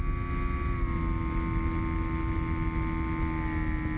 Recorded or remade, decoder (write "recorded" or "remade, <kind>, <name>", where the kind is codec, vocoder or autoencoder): recorded